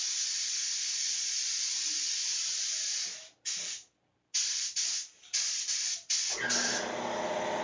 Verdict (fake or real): real